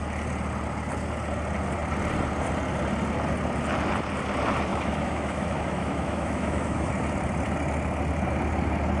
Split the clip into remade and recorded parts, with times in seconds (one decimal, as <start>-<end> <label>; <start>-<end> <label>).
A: 0.0-4.7 recorded; 4.7-6.9 remade; 6.9-9.0 recorded